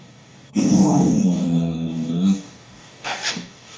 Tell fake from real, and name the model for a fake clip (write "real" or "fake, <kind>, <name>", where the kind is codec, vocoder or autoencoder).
fake, codec, DAC